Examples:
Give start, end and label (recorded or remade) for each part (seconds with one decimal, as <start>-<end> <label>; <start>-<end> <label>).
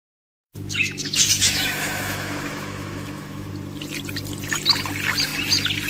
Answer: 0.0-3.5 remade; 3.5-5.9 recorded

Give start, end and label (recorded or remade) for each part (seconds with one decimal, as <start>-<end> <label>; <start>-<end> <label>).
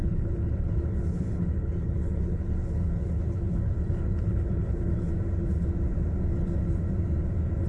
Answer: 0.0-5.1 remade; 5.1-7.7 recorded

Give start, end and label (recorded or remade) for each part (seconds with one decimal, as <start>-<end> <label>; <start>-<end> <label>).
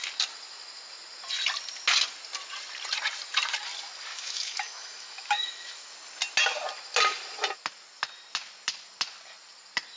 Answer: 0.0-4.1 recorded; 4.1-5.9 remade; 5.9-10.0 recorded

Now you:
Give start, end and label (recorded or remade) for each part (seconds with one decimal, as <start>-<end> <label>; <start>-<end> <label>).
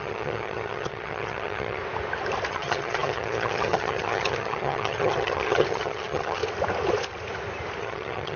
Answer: 0.0-1.8 remade; 1.8-2.5 recorded; 2.5-6.4 remade; 6.4-7.8 recorded; 7.8-8.4 remade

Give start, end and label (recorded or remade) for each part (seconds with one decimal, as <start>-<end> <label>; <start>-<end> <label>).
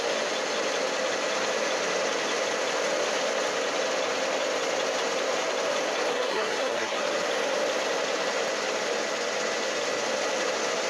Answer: 0.0-6.1 recorded; 6.1-7.0 remade; 7.0-10.9 recorded